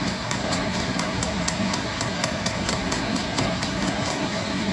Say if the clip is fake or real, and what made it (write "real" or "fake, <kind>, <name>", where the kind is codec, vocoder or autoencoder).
fake, codec, SNAC